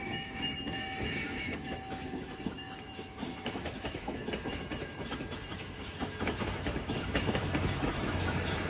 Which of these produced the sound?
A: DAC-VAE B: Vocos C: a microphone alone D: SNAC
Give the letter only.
A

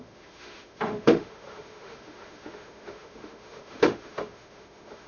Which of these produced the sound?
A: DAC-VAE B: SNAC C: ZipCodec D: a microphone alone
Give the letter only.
A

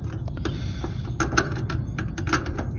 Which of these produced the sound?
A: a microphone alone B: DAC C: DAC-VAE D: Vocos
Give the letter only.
A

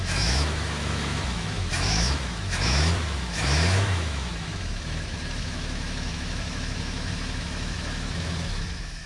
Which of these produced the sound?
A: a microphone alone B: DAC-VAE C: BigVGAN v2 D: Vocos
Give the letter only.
B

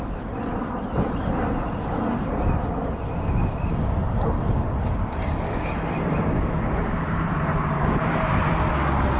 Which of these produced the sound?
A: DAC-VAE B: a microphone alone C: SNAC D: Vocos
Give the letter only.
B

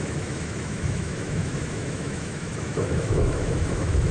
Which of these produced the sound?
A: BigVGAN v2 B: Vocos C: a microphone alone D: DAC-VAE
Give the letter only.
D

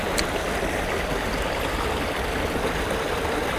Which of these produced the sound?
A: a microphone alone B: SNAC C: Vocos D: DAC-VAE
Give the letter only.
A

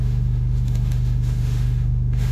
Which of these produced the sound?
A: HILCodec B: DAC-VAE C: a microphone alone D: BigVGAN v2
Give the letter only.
B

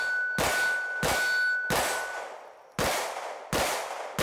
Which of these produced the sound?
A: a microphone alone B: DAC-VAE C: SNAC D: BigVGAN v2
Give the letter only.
A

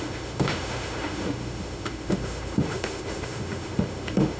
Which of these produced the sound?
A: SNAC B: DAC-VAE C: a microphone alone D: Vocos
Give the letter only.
B